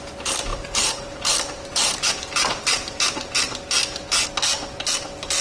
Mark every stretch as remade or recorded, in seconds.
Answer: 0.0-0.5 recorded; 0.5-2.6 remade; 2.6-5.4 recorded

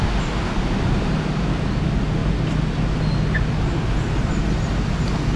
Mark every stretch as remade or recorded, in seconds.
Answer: 0.0-5.4 recorded

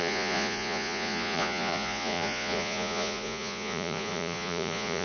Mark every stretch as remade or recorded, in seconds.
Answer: 0.0-5.0 remade